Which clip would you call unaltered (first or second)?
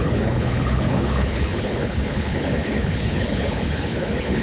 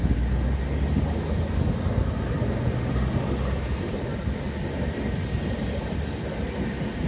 second